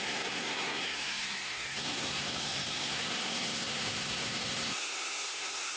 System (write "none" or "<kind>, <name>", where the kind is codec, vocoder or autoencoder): codec, SNAC